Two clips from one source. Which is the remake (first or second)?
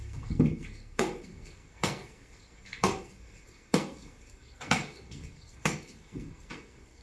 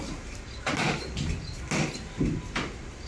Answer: first